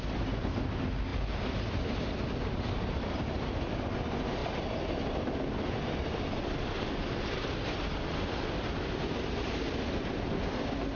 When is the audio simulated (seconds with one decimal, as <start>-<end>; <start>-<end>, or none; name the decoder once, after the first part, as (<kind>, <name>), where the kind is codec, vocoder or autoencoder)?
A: none